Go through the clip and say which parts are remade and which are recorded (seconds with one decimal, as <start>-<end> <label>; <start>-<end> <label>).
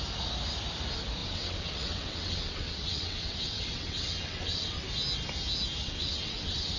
0.0-1.2 recorded; 1.2-4.8 remade; 4.8-5.8 recorded; 5.8-6.8 remade